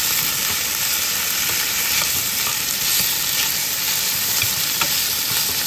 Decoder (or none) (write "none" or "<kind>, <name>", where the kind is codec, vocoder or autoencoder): none